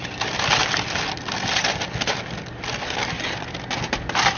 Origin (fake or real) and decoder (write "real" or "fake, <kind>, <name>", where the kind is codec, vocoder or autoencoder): real